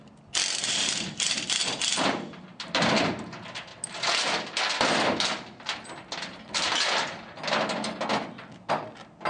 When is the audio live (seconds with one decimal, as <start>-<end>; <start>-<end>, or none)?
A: 0.0-9.3